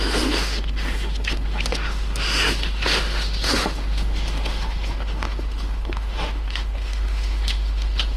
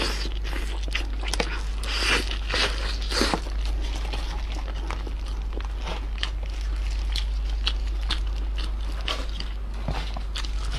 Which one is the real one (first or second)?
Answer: second